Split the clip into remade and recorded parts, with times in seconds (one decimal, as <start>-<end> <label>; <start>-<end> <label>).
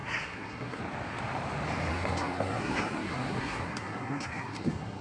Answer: 0.0-0.8 remade; 0.8-1.9 recorded; 1.9-5.0 remade